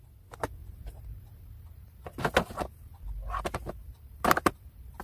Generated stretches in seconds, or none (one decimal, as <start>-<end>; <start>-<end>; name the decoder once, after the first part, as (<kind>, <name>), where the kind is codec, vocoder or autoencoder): 0.6-2.0 (vocoder, BigVGAN v2); 3.6-5.0